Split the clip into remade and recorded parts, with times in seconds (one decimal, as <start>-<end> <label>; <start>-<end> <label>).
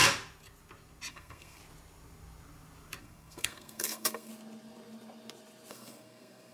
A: 0.0-1.1 recorded; 1.1-1.6 remade; 1.6-3.0 recorded; 3.0-4.3 remade; 4.3-5.7 recorded; 5.7-6.5 remade